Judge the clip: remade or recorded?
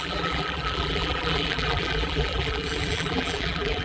remade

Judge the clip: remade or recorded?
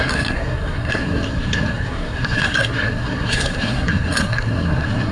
remade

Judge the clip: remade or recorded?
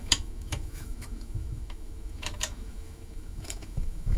remade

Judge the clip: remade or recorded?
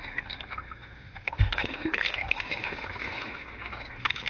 remade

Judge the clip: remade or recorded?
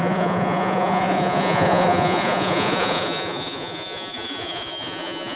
remade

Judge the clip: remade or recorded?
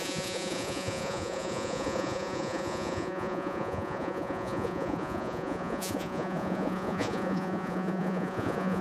remade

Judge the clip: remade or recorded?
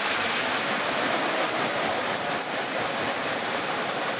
recorded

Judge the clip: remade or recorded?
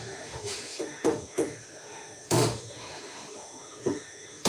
remade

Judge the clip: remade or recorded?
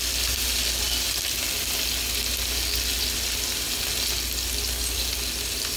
recorded